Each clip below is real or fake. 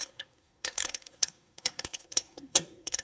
fake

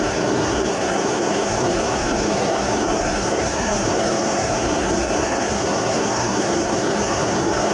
fake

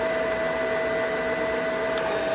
real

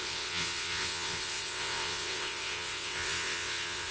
fake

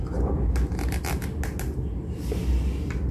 real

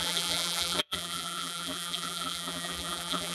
fake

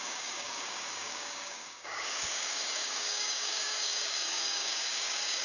fake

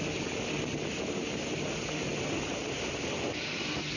real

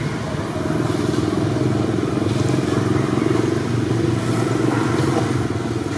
real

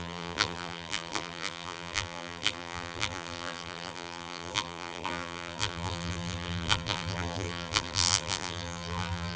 fake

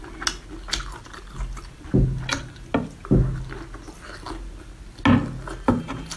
real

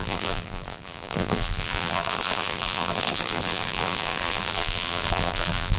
fake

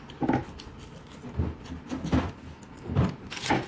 real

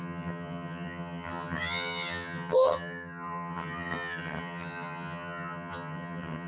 fake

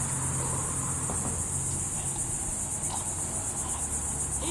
real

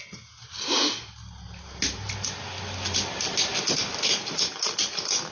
real